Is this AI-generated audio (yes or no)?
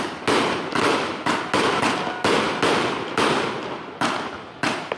no